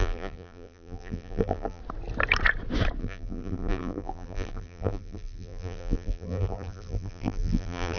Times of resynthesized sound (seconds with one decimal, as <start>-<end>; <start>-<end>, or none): 0.0-1.8; 3.0-8.0